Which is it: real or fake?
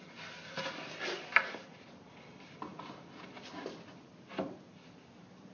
real